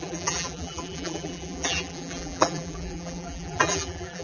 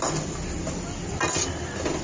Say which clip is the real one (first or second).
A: second